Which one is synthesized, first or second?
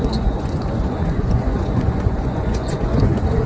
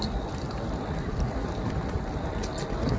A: first